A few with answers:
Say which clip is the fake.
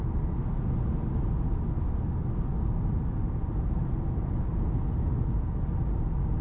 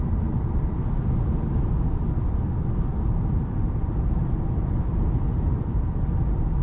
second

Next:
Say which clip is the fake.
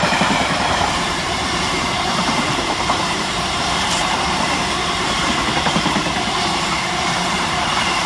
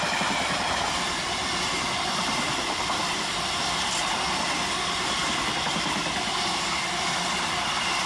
first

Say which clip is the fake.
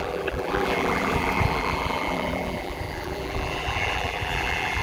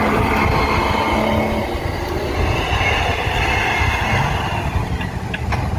first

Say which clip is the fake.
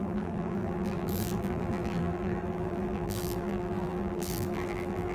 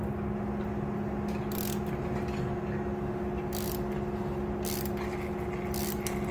first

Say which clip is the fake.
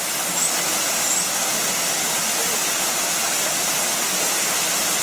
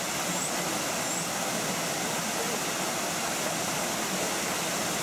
second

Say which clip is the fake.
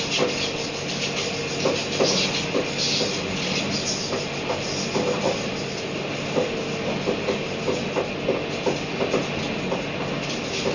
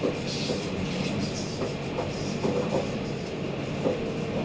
second